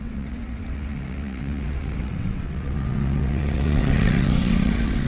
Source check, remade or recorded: remade